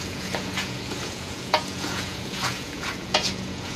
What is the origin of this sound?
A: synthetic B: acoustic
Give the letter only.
A